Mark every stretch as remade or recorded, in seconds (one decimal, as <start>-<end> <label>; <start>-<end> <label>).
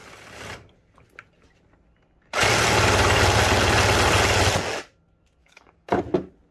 0.0-5.4 recorded; 5.4-6.0 remade; 6.0-6.5 recorded